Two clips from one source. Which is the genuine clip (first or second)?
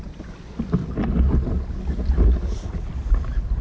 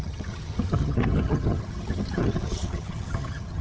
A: first